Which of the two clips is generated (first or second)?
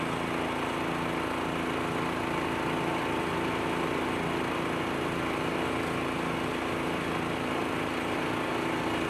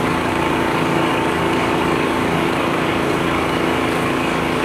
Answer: second